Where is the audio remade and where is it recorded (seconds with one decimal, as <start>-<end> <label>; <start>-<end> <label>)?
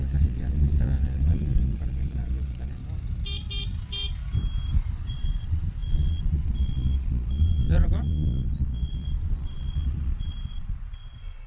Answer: 0.0-2.8 remade; 2.8-5.1 recorded; 5.1-11.5 remade